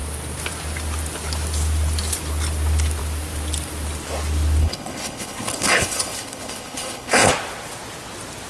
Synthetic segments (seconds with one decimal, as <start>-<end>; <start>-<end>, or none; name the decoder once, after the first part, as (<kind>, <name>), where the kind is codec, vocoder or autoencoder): 4.6-7.3 (codec, HILCodec)